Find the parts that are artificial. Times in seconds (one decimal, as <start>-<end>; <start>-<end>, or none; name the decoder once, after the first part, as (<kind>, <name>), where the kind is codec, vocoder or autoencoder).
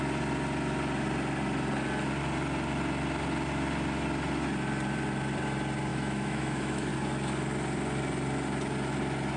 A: 5.9-6.9 (autoencoder, DAC-VAE)